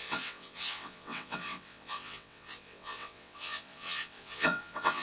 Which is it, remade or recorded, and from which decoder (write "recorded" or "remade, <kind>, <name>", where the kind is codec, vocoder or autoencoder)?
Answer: remade, vocoder, WaveNeXt